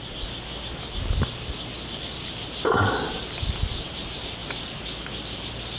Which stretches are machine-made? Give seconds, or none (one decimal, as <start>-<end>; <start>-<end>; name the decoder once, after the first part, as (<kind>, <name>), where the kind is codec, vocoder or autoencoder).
none

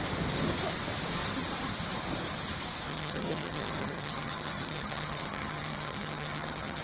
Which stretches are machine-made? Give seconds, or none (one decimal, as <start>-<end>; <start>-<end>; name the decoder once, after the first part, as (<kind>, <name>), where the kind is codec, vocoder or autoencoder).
2.9-6.8 (vocoder, HiFi-GAN)

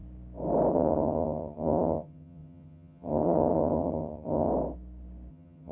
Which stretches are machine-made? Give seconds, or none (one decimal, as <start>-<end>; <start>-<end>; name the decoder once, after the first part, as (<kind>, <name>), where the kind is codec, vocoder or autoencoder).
0.7-4.5 (vocoder, HiFi-GAN); 5.3-5.7

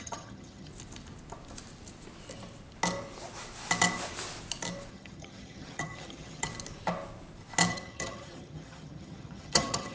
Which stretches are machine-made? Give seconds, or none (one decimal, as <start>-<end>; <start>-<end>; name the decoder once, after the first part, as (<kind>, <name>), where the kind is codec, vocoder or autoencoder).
0.0-0.7 (vocoder, HiFi-GAN); 4.9-6.5; 7.7-9.9

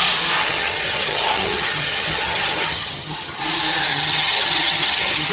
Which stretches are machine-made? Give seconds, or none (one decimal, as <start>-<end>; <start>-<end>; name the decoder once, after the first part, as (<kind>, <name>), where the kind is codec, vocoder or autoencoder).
0.4-3.4 (vocoder, HiFi-GAN); 3.9-5.3